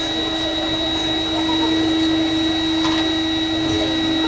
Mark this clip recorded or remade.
recorded